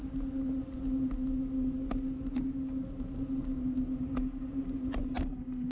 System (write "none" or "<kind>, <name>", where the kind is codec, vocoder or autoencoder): none